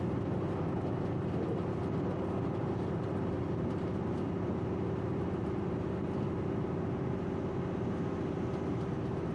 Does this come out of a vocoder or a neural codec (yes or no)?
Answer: no